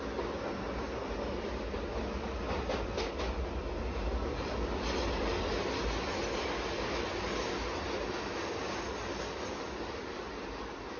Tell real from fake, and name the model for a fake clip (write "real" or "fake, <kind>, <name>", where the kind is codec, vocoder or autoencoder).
real